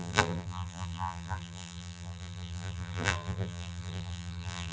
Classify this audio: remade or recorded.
remade